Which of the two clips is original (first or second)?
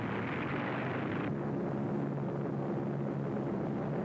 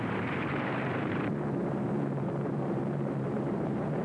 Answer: first